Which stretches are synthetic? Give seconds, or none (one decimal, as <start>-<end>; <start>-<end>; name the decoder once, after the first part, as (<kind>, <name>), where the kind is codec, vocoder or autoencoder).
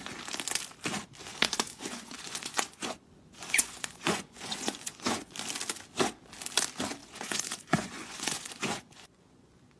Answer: 1.3-5.3 (vocoder, Vocos); 7.0-9.8